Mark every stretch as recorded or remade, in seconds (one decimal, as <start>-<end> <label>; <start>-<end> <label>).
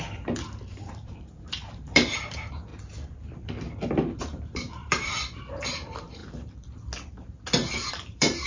0.0-2.7 remade; 2.7-4.2 recorded; 4.2-6.2 remade; 6.2-7.9 recorded; 7.9-8.5 remade